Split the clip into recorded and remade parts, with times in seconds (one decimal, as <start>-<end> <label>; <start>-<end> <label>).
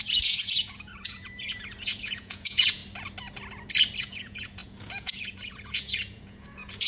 0.0-2.8 remade; 2.8-4.0 recorded; 4.0-6.9 remade